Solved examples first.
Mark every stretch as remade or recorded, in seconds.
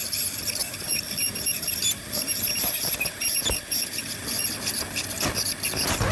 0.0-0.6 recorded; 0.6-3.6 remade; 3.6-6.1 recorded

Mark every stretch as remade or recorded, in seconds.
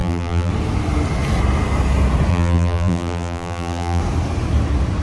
0.0-0.5 remade; 0.5-2.3 recorded; 2.3-4.0 remade; 4.0-5.0 recorded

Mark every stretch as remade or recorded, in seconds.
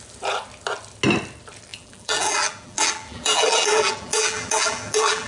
0.0-1.7 recorded; 1.7-5.3 remade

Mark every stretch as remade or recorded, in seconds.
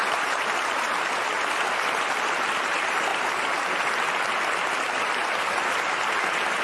0.0-1.1 remade; 1.1-3.1 recorded; 3.1-3.9 remade; 3.9-6.6 recorded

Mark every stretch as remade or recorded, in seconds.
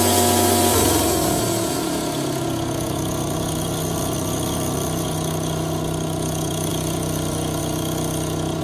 0.0-6.7 recorded; 6.7-7.6 remade; 7.6-8.6 recorded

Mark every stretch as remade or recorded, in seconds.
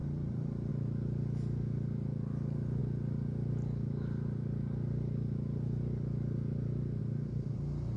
0.0-0.7 remade; 0.7-8.0 recorded